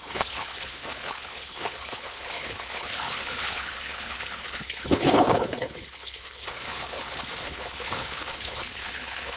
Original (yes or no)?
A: no